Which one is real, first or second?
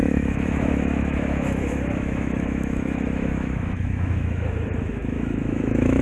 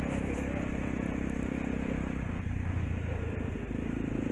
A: second